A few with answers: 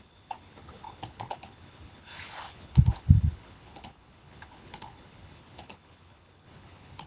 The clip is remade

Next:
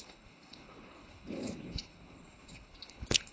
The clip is remade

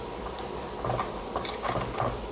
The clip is recorded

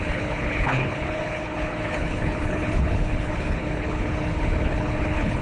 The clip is remade